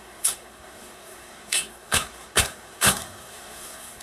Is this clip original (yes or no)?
no